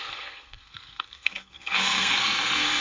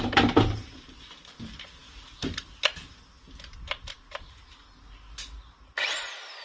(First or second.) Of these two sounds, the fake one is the first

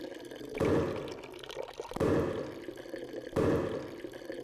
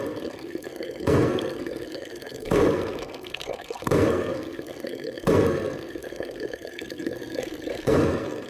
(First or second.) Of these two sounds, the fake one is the second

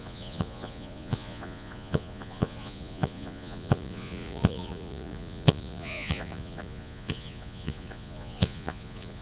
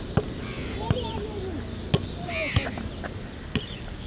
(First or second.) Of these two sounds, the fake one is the first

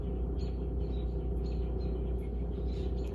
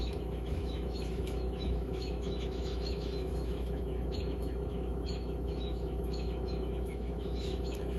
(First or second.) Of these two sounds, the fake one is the second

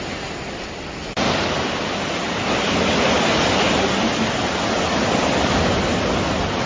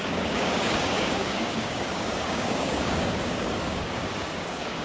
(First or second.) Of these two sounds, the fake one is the second